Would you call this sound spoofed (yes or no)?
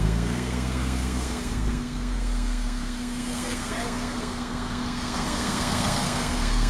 yes